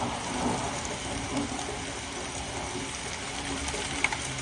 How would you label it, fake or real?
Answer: real